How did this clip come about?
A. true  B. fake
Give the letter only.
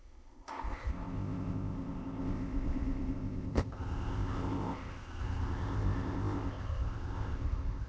B